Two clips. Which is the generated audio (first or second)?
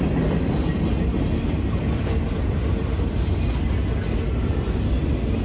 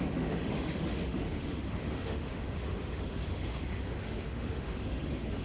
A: second